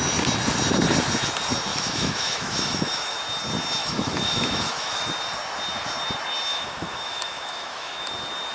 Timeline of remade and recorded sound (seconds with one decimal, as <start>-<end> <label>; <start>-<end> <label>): 0.0-1.7 recorded; 1.7-3.2 remade; 3.2-3.8 recorded; 3.8-5.0 remade; 5.0-6.5 recorded; 6.5-8.1 remade; 8.1-8.5 recorded